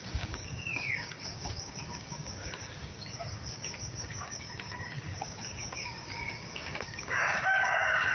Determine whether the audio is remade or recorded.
remade